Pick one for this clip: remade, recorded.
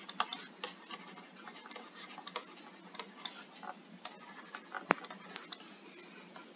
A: recorded